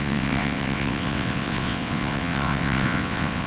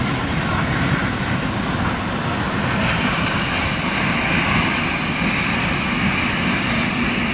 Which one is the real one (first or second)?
second